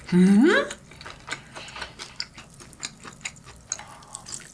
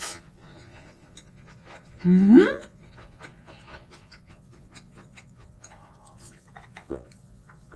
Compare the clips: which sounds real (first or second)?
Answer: first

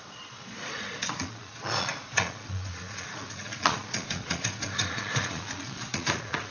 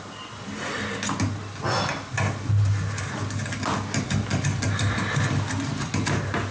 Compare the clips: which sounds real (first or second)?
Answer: second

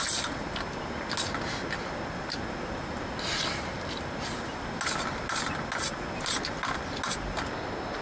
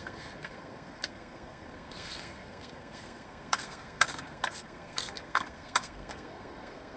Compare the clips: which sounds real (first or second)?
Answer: first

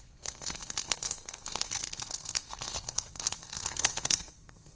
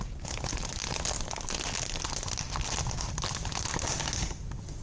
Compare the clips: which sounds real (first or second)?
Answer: second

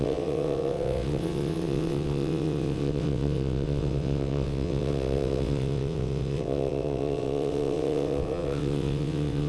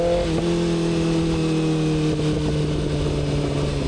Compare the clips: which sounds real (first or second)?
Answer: second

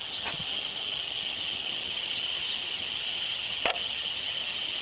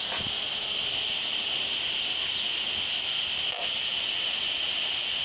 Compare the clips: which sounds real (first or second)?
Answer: second